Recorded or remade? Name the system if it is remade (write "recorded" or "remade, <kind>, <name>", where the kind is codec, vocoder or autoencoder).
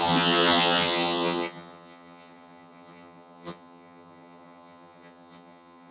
remade, vocoder, HiFi-GAN